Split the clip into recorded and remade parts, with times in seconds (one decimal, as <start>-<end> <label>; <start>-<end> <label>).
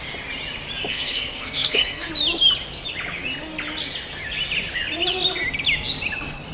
0.0-0.9 recorded; 0.9-2.1 remade; 2.1-6.5 recorded